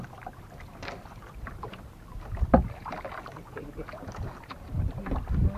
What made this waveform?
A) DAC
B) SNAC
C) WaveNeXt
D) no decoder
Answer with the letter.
D